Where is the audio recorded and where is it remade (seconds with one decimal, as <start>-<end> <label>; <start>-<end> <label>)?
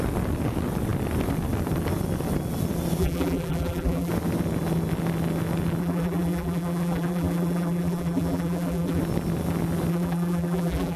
0.0-3.0 recorded; 3.0-4.1 remade; 4.1-5.8 recorded; 5.8-9.0 remade; 9.0-9.9 recorded; 9.9-11.0 remade